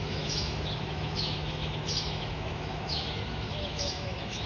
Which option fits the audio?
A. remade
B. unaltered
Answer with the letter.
A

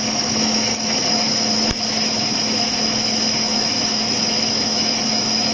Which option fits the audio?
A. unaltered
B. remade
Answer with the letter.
B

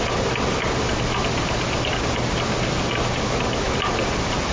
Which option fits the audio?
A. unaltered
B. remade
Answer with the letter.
A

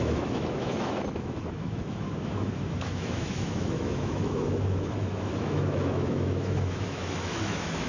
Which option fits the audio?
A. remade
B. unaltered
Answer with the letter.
A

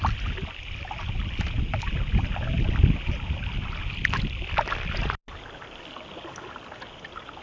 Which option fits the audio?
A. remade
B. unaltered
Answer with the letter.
B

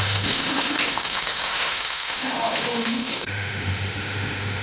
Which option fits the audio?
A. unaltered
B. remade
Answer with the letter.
B